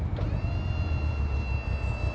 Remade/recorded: recorded